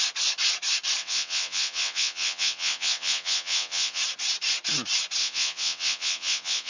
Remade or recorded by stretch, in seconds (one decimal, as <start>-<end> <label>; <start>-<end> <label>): 0.0-1.0 recorded; 1.0-4.0 remade; 4.0-5.2 recorded; 5.2-6.7 remade